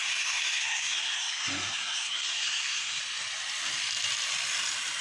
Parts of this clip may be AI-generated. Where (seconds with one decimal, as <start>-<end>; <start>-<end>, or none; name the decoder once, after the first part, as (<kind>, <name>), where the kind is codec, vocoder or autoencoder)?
0.0-3.0 (codec, SNAC)